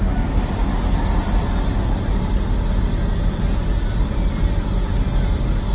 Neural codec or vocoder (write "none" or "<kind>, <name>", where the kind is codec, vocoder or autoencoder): none